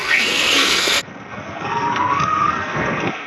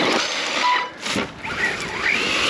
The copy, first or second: first